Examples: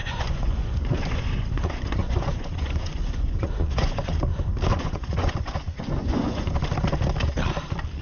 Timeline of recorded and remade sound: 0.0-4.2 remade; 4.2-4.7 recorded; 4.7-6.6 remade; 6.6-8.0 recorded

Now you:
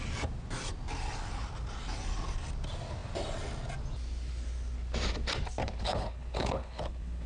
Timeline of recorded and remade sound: 0.0-5.6 recorded; 5.6-7.3 remade